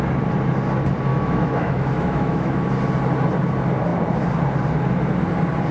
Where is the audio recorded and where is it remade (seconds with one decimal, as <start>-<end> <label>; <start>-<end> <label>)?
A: 0.0-1.1 recorded; 1.1-2.6 remade; 2.6-5.7 recorded